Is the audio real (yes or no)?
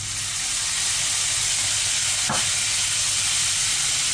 yes